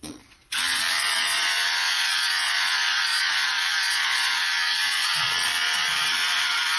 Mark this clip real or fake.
fake